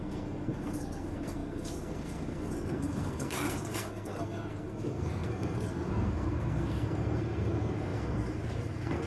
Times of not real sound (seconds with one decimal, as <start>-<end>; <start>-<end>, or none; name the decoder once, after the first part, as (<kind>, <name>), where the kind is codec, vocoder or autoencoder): 0.0-9.1 (codec, SNAC)